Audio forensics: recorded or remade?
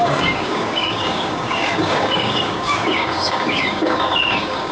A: remade